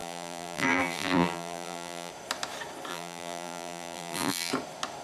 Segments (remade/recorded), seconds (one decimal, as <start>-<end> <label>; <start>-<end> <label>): 0.0-2.1 remade; 2.1-2.9 recorded; 2.9-4.5 remade; 4.5-5.0 recorded